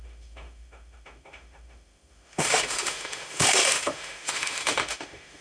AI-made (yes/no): yes